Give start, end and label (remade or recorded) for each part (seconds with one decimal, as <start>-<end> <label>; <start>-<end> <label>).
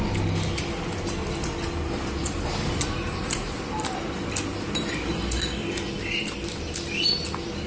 0.0-2.2 recorded; 2.2-4.0 remade; 4.0-7.7 recorded